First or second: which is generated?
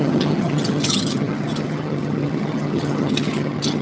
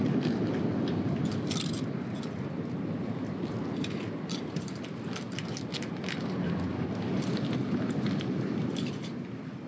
first